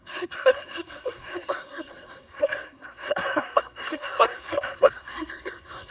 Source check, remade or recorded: remade